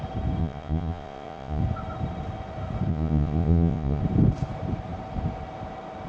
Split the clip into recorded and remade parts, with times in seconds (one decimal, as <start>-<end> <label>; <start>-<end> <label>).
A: 0.0-0.4 recorded; 0.4-1.6 remade; 1.6-2.9 recorded; 2.9-4.0 remade; 4.0-6.1 recorded